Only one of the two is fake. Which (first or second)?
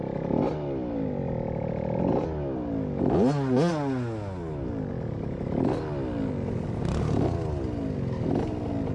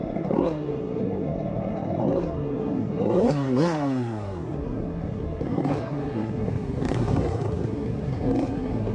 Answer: second